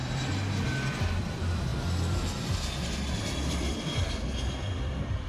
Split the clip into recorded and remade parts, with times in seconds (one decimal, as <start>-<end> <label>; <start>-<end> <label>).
0.0-1.2 recorded; 1.2-1.7 remade; 1.7-3.2 recorded; 3.2-5.3 remade